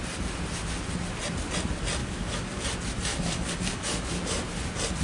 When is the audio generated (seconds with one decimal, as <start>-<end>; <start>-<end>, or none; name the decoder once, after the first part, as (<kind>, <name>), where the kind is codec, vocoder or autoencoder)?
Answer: 2.0-2.6 (codec, DAC); 3.1-4.2